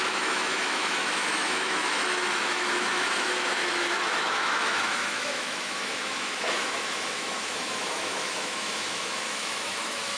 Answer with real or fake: fake